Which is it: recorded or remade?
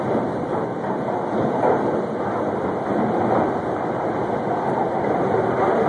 recorded